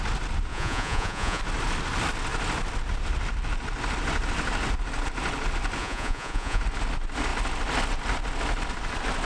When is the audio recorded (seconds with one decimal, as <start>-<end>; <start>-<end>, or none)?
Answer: 0.0-0.5; 1.4-5.8; 6.6-9.3